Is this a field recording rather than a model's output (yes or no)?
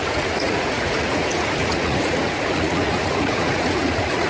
no